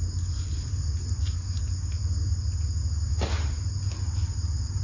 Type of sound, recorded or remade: recorded